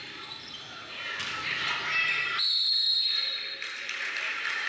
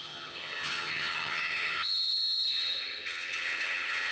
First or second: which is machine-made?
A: second